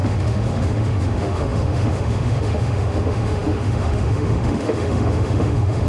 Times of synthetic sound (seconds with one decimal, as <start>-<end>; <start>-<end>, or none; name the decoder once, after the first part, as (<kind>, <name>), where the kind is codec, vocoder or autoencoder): 0.0-5.9 (autoencoder, DAC-VAE)